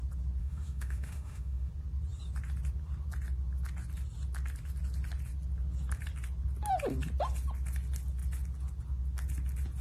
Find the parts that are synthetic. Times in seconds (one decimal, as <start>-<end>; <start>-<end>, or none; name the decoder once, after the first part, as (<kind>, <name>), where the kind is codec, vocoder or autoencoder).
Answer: 0.4-1.7 (autoencoder, DAC-VAE)